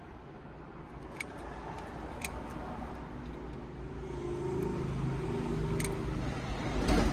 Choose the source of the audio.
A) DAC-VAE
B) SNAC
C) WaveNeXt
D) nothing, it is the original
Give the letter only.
D